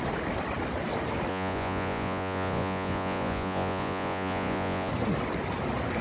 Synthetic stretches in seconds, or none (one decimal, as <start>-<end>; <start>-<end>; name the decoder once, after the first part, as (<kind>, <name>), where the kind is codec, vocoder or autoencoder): 1.3-4.9 (vocoder, Vocos)